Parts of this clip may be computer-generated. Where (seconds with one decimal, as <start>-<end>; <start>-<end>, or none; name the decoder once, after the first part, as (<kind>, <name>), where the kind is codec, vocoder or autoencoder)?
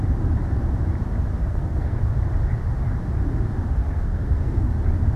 1.4-2.0 (codec, SNAC); 3.8-4.7